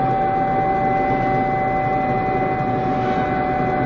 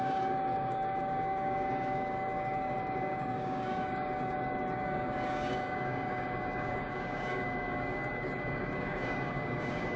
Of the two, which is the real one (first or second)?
first